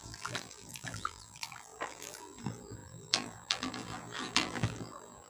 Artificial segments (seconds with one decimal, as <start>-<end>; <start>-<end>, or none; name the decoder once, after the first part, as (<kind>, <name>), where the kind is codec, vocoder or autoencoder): 0.0-5.3 (vocoder, BigVGAN v2)